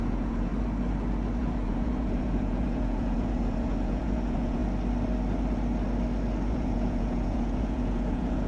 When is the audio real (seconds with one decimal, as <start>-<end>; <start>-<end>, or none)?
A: 0.5-1.4; 4.6-6.5